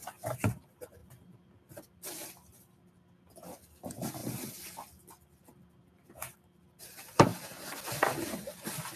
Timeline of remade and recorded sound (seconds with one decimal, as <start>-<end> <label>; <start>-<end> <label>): 0.0-9.0 recorded